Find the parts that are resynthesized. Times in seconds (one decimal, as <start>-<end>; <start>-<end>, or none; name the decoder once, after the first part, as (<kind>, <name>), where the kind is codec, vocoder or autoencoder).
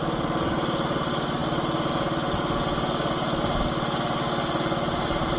none